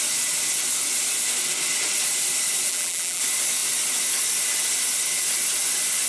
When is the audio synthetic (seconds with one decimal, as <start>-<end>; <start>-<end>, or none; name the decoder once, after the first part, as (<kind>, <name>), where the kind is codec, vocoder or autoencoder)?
2.7-3.2 (vocoder, BigVGAN v2)